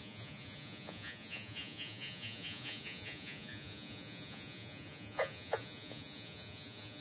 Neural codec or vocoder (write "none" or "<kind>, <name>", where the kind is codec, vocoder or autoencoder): vocoder, Vocos